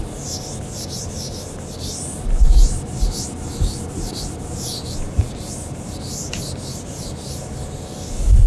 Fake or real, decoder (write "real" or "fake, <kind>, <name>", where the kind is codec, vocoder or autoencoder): real